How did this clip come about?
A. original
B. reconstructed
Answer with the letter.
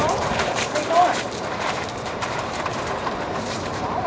B